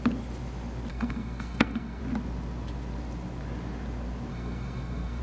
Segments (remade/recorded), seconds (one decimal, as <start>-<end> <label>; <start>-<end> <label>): 0.0-0.9 recorded; 0.9-2.0 remade; 2.0-4.3 recorded; 4.3-5.2 remade